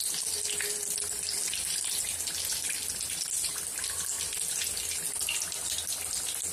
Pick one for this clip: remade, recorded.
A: recorded